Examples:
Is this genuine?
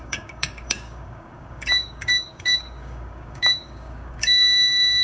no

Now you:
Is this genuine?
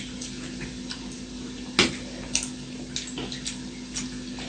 yes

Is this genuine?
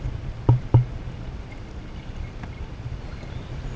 yes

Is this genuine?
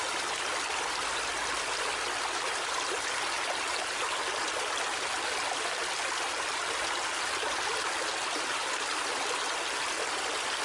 yes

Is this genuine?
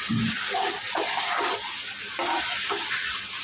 yes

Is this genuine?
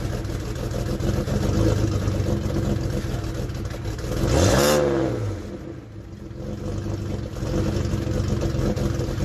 yes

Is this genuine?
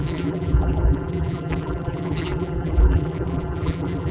no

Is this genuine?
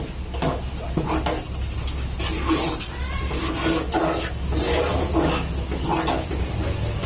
yes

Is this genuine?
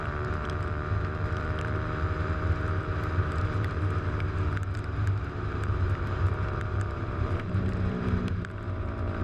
no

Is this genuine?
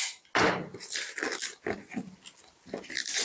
yes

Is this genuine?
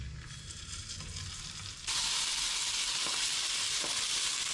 yes